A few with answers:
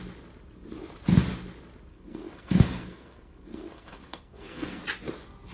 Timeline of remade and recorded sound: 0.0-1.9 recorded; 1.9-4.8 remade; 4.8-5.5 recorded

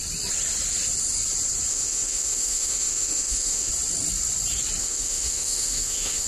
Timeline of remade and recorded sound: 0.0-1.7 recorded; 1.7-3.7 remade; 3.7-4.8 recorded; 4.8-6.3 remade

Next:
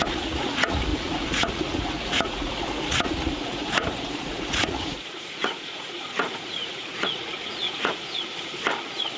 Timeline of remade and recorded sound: 0.0-8.3 remade; 8.3-9.2 recorded

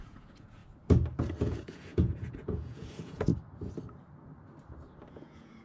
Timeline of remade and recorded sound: 0.0-0.6 remade; 0.6-1.4 recorded; 1.4-3.3 remade; 3.3-5.1 recorded; 5.1-5.6 remade

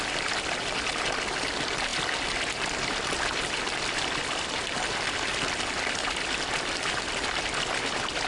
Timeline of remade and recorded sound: 0.0-8.3 recorded

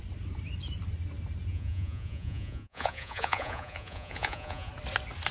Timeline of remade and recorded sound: 0.0-1.5 recorded; 1.5-4.7 remade; 4.7-5.3 recorded